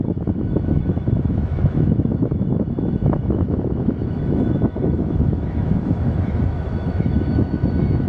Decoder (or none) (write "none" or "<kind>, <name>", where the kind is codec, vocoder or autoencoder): autoencoder, DAC-VAE